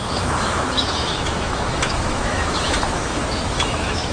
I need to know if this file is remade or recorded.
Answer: remade